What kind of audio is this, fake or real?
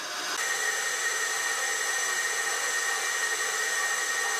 real